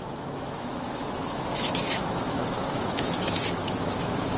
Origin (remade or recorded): remade